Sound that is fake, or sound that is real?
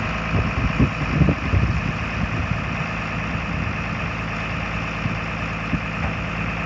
real